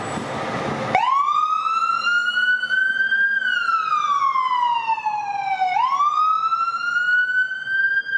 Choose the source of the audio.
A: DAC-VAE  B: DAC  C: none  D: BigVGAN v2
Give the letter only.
C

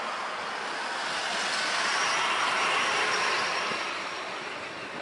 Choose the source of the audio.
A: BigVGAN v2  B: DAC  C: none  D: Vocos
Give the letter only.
C